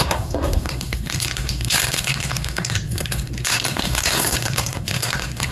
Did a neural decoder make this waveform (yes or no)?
yes